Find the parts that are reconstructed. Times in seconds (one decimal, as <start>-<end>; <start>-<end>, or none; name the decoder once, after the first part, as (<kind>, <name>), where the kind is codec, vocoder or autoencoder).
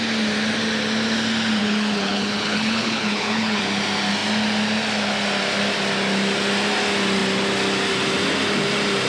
1.6-3.6 (codec, HILCodec)